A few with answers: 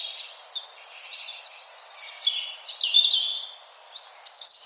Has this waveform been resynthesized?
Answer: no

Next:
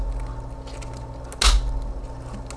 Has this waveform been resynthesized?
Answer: no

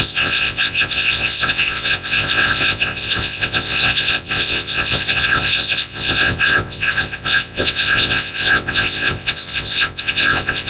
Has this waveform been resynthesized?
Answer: yes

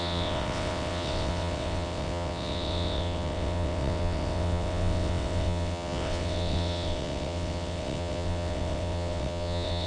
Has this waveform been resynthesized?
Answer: yes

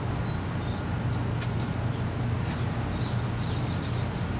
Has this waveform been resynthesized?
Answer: no